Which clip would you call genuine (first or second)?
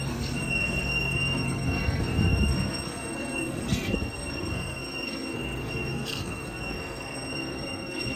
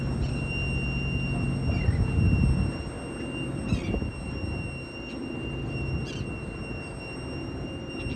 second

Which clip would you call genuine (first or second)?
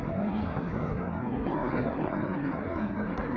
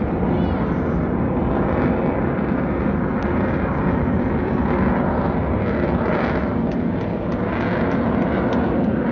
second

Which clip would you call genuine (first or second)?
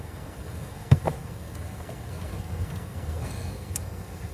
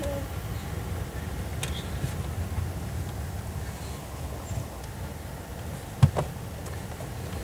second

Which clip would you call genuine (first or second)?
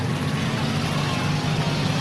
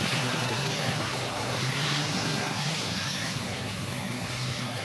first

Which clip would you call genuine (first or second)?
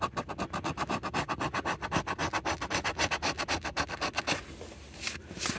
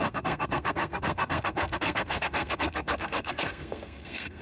first